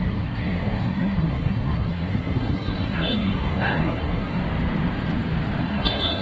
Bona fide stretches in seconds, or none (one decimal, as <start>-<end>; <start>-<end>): 4.4-5.6